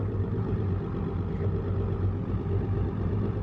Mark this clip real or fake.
real